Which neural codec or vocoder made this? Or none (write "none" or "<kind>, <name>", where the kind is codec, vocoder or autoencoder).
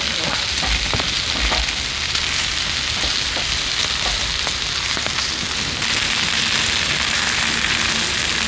none